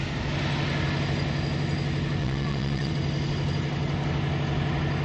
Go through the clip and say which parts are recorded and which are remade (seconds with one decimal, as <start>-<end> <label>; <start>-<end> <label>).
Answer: 0.0-2.2 recorded; 2.2-2.9 remade; 2.9-5.0 recorded